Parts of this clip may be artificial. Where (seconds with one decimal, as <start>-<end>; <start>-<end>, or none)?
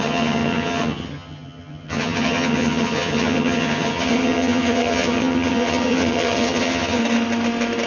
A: 0.0-7.0